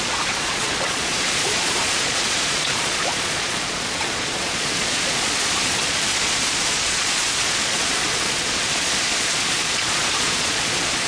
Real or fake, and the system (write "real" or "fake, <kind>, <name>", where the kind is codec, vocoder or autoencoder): fake, vocoder, Vocos